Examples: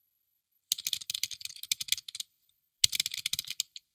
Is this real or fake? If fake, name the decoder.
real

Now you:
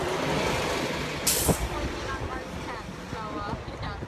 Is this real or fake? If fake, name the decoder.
real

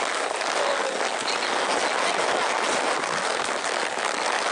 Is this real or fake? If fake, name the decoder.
real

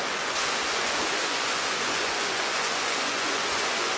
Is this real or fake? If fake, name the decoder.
fake, vocoder, Vocos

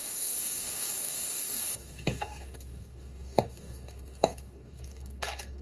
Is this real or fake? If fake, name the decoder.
fake, codec, DAC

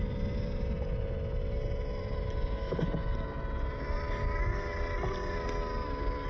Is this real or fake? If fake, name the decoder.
real